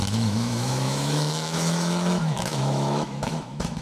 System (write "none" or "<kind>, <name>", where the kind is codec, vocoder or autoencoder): autoencoder, DAC-VAE